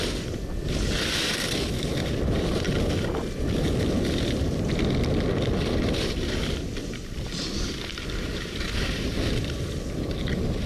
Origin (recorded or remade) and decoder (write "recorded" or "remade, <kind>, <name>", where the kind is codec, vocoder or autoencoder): recorded